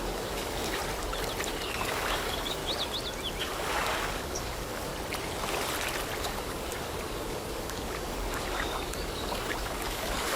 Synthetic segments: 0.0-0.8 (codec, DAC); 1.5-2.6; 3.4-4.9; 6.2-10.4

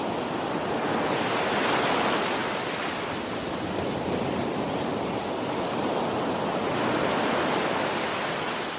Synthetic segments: none

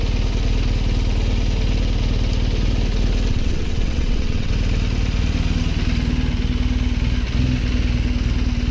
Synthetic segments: 3.3-4.5 (vocoder, WaveNeXt)

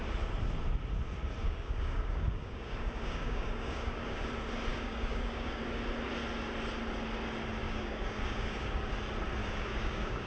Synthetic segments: 1.4-4.2 (codec, DAC); 4.7-5.6; 7.6-8.9; 9.4-10.3

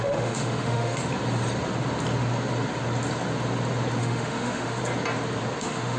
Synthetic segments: 0.0-1.0 (autoencoder, DAC-VAE); 4.0-4.8; 5.6-6.0

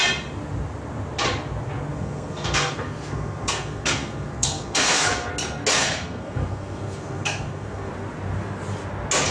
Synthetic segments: 1.9-5.3 (codec, SNAC); 5.8-7.9

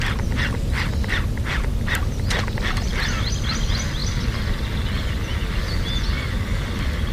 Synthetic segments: none